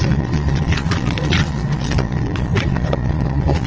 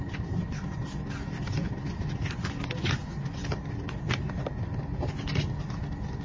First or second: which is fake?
first